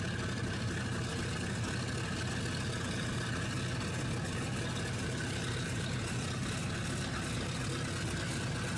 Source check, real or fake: real